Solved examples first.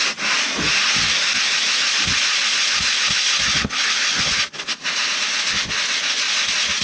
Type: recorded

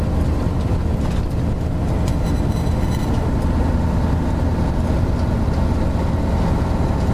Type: recorded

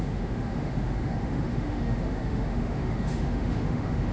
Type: remade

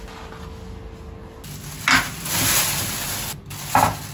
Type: recorded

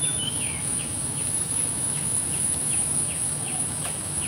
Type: remade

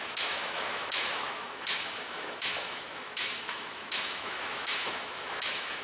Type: remade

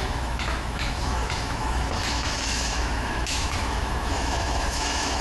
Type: remade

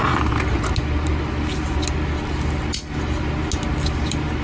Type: recorded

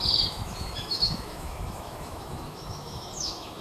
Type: remade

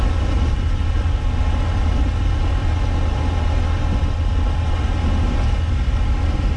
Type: recorded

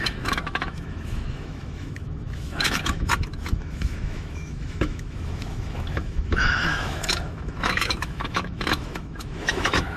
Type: remade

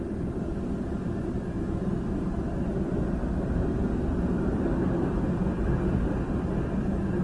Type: recorded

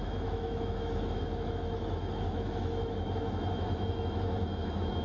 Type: remade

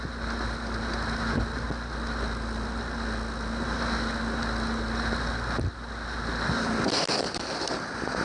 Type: recorded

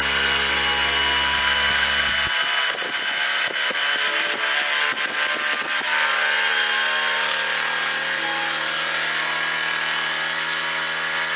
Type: recorded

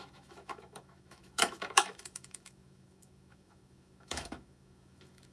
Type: remade